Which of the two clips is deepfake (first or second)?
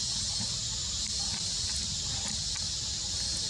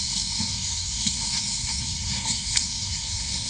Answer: second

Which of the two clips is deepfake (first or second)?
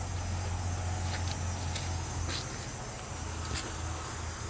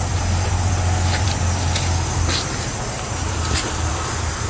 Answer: second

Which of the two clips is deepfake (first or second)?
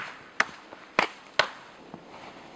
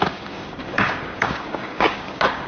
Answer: second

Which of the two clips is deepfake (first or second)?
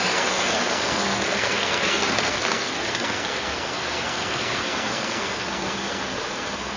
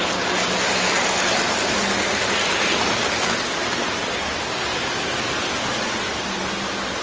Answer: first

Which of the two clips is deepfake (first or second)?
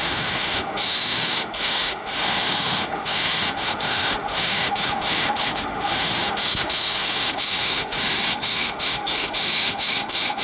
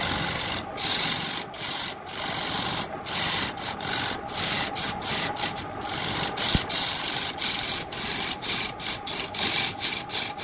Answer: first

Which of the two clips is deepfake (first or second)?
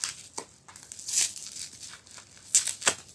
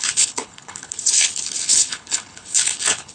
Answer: second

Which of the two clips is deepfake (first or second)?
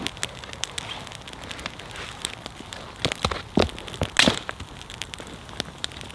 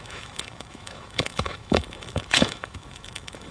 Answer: second